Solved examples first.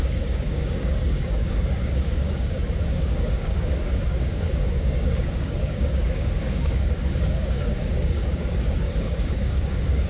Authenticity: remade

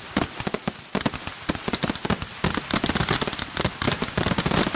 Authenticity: remade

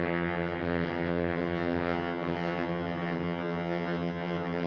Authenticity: remade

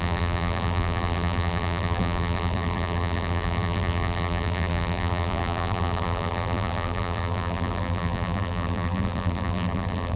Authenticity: remade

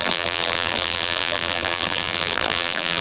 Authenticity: remade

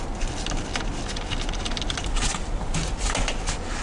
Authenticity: recorded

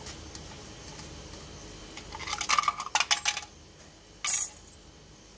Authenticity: recorded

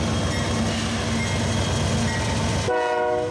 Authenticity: recorded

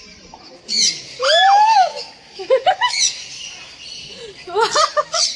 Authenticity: recorded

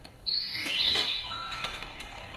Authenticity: remade